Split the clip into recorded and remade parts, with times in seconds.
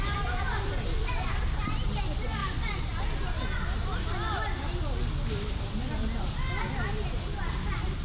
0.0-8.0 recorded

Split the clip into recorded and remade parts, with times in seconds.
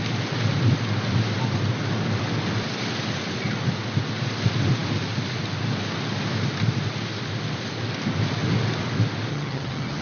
0.0-9.3 recorded; 9.3-10.0 remade